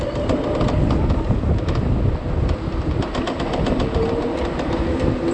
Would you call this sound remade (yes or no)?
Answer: no